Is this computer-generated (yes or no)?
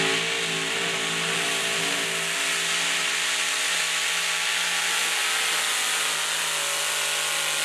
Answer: no